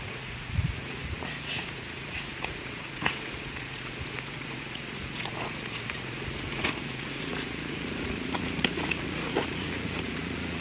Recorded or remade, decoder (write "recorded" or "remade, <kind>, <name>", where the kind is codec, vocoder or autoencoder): remade, vocoder, Vocos